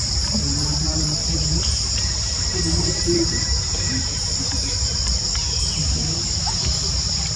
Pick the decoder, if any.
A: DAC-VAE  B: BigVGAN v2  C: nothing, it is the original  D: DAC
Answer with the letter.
B